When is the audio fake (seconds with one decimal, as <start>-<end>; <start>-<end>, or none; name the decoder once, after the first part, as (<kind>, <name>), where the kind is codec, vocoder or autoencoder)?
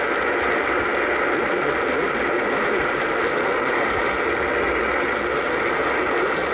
none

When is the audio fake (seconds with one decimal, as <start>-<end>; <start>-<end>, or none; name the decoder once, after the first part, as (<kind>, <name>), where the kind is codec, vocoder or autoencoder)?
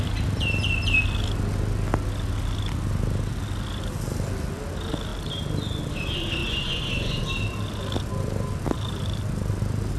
6.4-7.2 (vocoder, Vocos)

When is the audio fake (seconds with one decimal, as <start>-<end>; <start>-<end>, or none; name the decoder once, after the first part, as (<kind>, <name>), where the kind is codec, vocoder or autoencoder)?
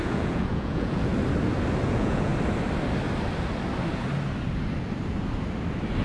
0.0-1.1 (vocoder, Vocos); 1.9-2.3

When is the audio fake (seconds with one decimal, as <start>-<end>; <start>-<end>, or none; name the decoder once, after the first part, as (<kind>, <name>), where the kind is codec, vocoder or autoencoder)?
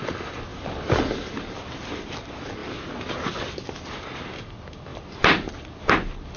none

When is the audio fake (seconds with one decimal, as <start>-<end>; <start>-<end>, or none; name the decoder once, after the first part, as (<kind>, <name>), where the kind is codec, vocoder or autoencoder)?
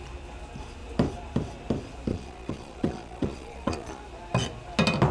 2.1-4.0 (vocoder, Vocos)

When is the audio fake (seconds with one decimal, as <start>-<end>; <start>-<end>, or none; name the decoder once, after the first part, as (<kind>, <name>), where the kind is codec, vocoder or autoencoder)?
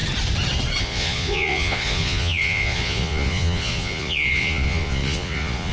0.8-5.7 (vocoder, Vocos)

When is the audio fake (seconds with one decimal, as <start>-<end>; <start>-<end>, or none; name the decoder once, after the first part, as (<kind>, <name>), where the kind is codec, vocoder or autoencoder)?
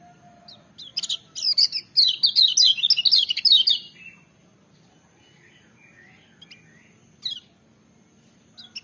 none